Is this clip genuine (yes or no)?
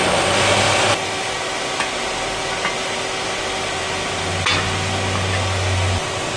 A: yes